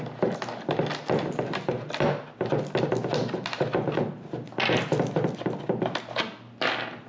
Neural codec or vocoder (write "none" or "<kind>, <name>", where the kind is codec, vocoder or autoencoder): none